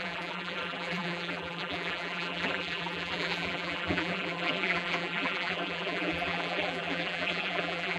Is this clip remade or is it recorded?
remade